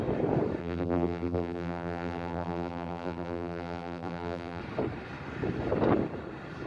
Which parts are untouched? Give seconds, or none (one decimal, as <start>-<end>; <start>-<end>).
0.0-0.6; 4.6-6.7